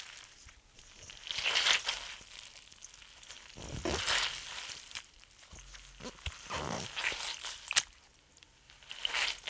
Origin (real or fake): real